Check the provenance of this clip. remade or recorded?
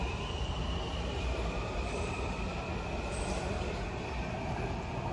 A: recorded